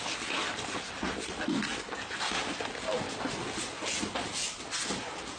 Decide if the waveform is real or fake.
real